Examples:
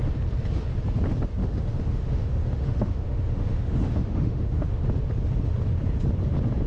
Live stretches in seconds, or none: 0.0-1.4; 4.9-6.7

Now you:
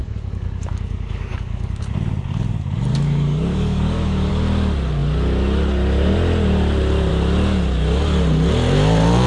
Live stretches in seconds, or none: 1.8-2.9; 4.3-9.3

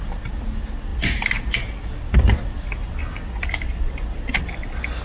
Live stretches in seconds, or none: 0.0-5.0

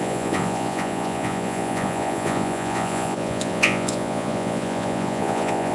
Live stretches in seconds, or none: none

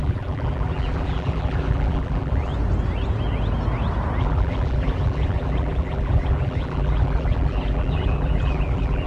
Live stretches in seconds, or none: 2.5-4.2

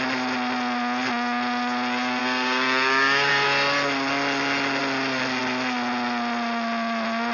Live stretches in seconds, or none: 0.0-2.2; 3.3-7.3

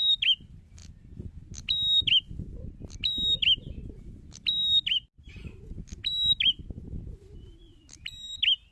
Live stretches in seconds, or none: 0.0-8.7